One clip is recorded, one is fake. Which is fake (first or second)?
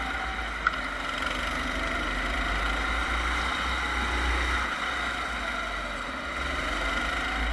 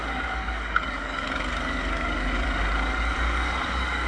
second